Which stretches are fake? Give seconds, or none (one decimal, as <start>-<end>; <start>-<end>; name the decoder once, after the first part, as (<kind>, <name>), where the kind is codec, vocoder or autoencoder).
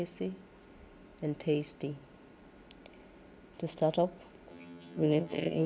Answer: 4.5-5.7 (vocoder, HiFi-GAN)